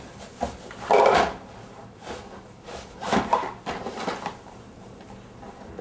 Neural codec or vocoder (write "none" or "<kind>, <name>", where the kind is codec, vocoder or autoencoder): none